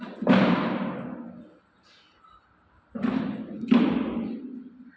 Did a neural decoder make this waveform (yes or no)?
no